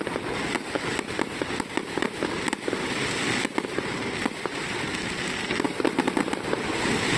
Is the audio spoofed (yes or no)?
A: no